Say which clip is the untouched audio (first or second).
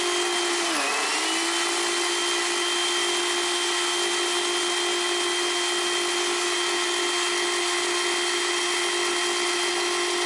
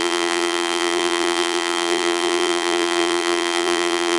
first